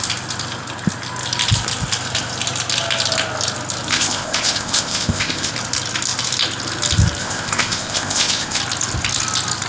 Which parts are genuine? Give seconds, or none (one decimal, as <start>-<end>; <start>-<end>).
0.0-3.9; 5.5-7.2; 8.6-9.7